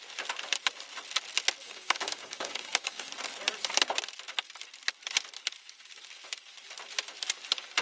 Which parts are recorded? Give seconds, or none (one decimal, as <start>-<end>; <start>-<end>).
0.0-1.6; 3.1-7.8